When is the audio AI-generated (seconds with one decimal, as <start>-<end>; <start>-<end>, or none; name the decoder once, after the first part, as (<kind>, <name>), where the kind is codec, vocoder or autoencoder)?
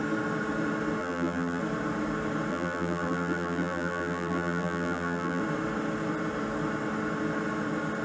1.0-1.6 (vocoder, BigVGAN v2); 2.5-5.4